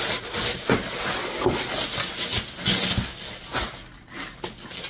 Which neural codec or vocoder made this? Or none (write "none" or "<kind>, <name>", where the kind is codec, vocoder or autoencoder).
none